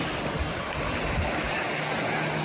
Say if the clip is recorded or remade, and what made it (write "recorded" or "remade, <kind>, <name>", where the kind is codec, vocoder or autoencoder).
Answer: recorded